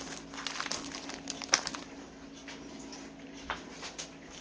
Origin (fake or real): real